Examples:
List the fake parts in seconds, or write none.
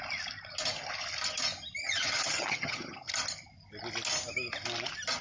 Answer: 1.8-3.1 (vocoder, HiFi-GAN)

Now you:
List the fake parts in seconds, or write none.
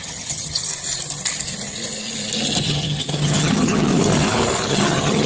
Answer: 0.0-0.7 (vocoder, HiFi-GAN); 2.6-3.9; 4.7-5.3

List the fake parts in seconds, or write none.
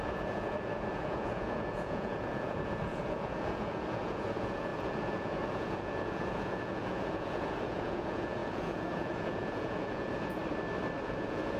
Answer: 0.0-10.4 (vocoder, Vocos); 11.0-11.6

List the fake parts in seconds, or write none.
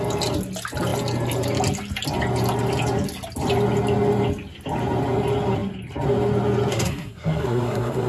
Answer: 6.7-8.1 (codec, SNAC)